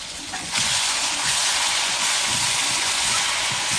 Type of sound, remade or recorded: remade